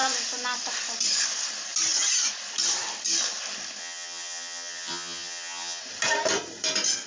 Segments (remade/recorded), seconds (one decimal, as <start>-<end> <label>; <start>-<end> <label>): 0.0-3.8 recorded; 3.8-5.8 remade; 5.8-7.1 recorded